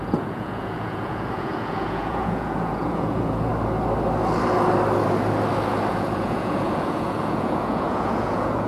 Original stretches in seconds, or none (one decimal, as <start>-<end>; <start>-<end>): 3.5-5.9